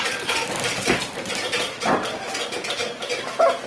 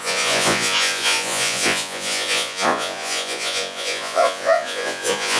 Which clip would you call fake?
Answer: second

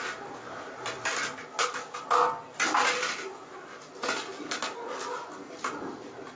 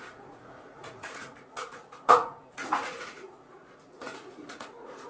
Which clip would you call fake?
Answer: second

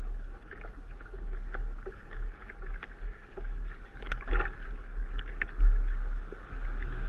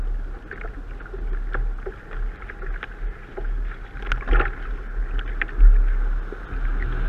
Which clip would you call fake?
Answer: first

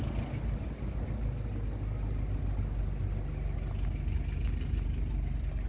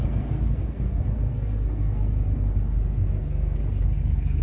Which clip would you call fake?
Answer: second